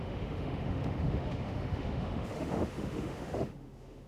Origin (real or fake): fake